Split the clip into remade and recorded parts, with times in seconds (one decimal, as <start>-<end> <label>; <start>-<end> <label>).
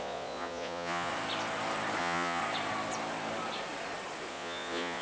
0.0-1.1 remade; 1.1-2.0 recorded; 2.0-2.4 remade; 2.4-4.3 recorded; 4.3-5.0 remade